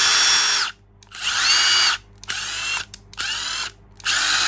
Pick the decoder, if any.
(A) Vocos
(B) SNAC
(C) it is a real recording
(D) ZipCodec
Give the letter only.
C